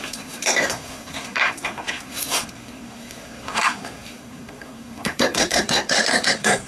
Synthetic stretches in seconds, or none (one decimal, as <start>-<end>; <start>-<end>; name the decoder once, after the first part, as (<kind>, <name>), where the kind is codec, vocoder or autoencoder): 0.0-6.7 (codec, SNAC)